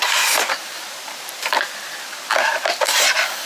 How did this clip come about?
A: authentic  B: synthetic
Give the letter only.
B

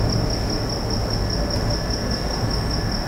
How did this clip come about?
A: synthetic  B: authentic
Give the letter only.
B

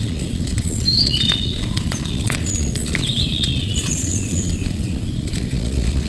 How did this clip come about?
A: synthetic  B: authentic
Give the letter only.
A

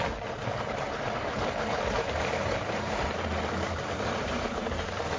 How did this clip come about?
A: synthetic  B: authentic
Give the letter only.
A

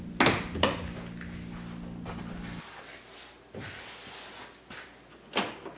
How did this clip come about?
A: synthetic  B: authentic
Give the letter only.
B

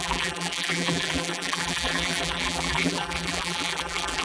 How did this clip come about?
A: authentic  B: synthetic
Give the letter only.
B